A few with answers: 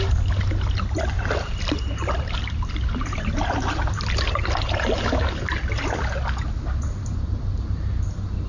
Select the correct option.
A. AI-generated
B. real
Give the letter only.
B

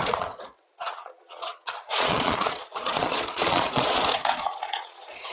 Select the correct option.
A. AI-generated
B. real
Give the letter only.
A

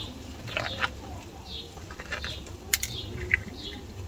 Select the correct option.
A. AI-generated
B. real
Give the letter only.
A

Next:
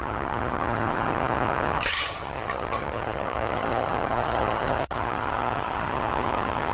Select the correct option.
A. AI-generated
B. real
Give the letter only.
A